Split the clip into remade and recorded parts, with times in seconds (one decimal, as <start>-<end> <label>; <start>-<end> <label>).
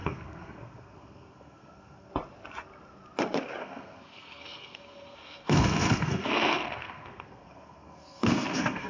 0.0-2.1 remade; 2.1-3.6 recorded; 3.6-8.9 remade